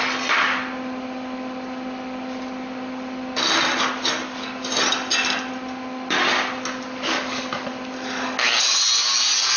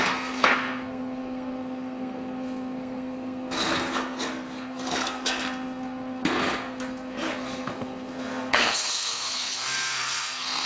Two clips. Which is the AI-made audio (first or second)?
second